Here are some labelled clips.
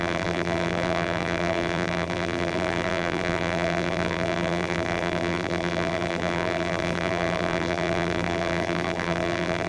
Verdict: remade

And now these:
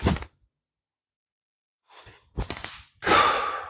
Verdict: recorded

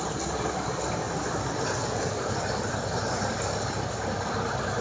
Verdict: recorded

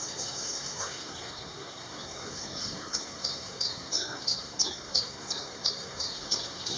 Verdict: remade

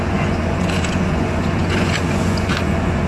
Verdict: remade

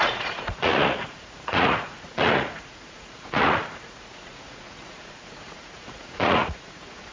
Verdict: remade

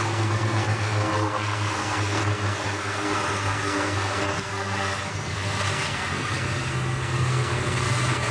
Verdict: remade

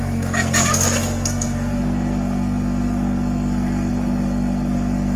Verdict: remade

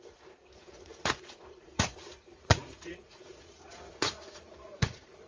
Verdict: remade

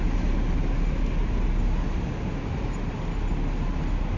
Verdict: recorded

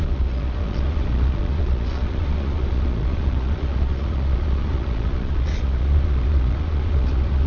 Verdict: remade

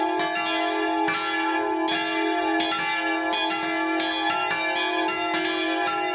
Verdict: recorded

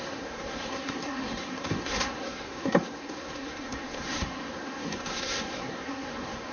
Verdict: remade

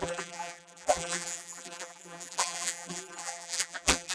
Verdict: remade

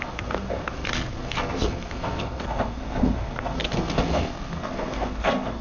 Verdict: remade